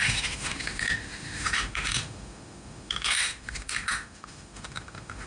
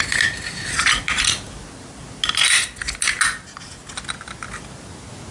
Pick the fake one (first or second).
first